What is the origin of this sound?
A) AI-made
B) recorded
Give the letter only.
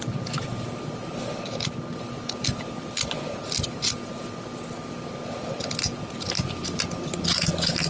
B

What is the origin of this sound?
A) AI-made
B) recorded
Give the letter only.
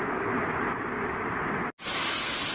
B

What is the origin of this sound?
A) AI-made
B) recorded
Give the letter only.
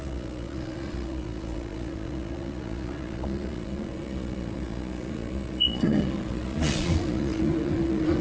A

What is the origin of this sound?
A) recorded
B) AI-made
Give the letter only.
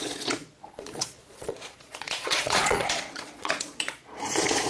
B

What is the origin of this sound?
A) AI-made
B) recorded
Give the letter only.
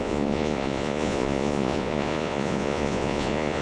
A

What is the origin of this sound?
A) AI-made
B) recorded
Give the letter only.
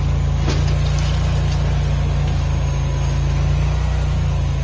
B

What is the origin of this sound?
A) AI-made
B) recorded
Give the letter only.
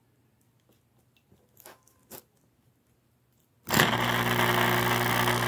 B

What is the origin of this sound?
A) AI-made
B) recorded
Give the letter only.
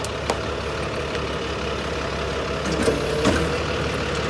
B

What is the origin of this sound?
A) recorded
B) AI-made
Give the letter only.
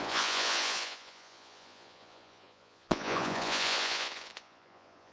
B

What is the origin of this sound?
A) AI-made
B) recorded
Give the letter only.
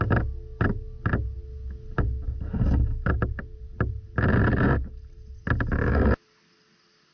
B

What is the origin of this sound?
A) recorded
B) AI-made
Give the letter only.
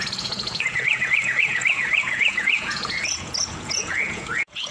B